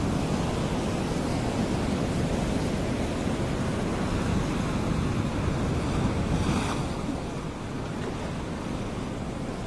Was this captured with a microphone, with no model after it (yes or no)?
yes